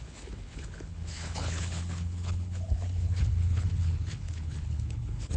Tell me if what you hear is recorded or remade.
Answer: remade